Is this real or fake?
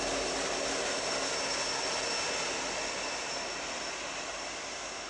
real